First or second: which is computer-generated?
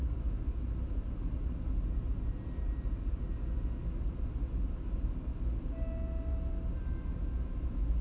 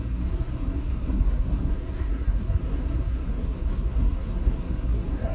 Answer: second